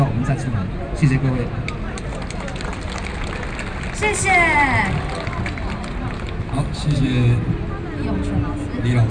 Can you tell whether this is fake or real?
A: real